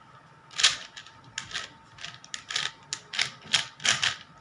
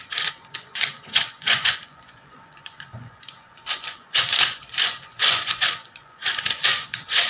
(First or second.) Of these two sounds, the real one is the first